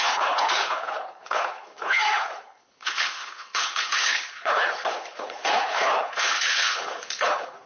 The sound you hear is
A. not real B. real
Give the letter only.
A